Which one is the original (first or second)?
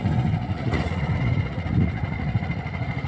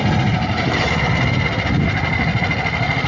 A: second